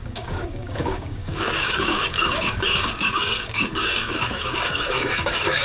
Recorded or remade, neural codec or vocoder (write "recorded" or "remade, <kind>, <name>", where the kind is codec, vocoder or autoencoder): remade, codec, DAC